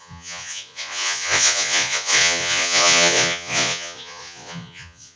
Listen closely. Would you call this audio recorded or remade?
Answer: remade